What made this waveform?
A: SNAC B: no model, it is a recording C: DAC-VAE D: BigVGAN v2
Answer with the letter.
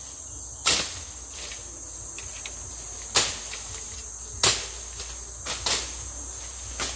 B